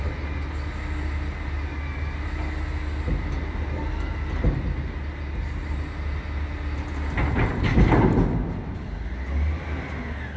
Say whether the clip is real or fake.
real